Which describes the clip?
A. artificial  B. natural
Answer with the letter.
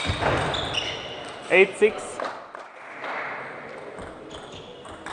B